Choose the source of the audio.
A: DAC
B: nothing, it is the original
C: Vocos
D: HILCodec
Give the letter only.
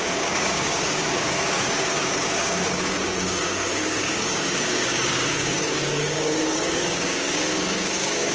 A